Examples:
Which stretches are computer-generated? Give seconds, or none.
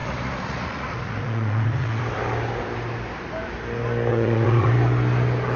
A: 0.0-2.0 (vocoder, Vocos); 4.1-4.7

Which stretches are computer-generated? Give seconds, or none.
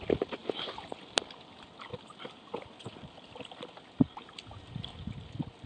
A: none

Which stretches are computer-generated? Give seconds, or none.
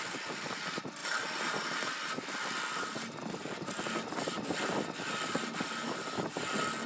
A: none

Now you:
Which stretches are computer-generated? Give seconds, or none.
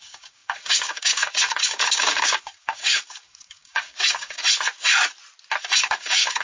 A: 0.0-4.4 (codec, DAC); 5.8-6.4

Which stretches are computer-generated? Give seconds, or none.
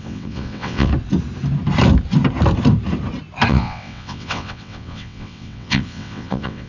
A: 0.0-0.9 (vocoder, WaveNeXt); 3.5-6.7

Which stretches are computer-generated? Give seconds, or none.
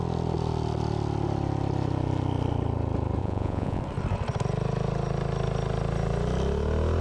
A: 3.2-3.8 (vocoder, Vocos)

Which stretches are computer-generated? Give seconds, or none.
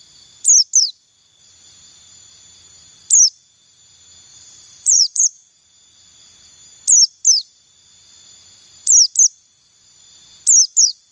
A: 4.3-5.5 (vocoder, BigVGAN v2)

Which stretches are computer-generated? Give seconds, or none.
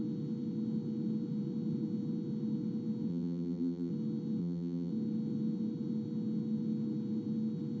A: 3.1-3.9 (vocoder, BigVGAN v2); 4.4-4.9